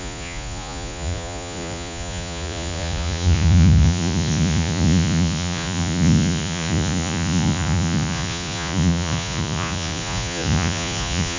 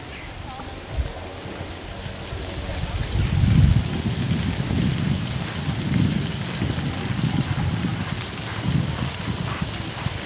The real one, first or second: second